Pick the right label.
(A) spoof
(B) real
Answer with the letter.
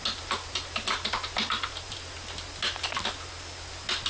B